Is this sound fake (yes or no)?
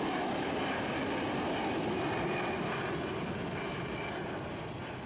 no